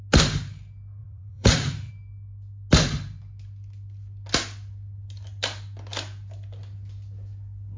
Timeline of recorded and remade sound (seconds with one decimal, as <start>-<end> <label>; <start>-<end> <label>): 0.0-1.0 recorded; 1.0-1.9 remade; 1.9-7.8 recorded